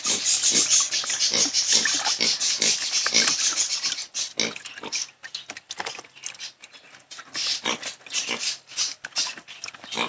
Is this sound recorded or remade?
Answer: recorded